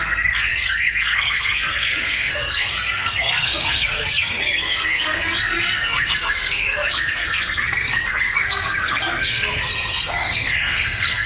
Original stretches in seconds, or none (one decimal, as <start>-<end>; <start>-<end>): none